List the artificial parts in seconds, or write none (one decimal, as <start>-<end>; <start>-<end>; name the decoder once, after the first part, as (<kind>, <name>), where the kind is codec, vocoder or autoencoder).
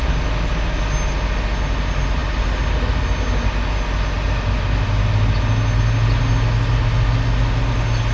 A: none